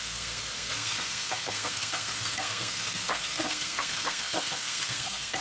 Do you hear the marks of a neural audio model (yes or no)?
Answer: yes